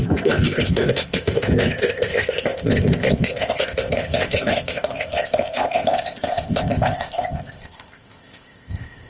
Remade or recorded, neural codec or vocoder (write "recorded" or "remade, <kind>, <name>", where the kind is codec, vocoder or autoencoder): remade, codec, ZipCodec